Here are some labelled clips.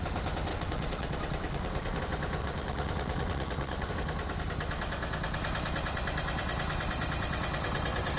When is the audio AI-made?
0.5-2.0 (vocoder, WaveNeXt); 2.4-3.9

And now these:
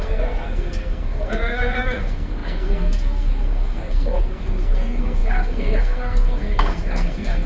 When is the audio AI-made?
0.0-7.5 (codec, SNAC)

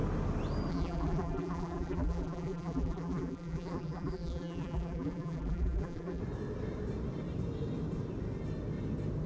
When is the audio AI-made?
0.7-6.2 (vocoder, BigVGAN v2)

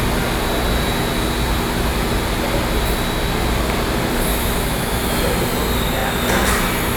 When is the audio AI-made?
4.3-5.2 (autoencoder, DAC-VAE)

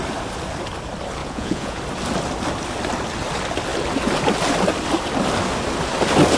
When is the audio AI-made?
1.2-1.8 (vocoder, Vocos)